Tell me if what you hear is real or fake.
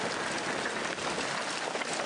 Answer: real